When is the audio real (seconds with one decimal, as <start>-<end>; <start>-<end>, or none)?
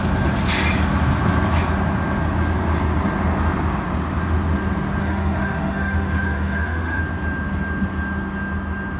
0.0-5.0; 7.0-9.0